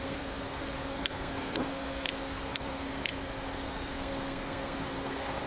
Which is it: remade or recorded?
remade